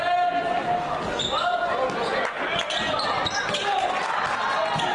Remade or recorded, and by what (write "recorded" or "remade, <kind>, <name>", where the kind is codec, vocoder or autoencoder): recorded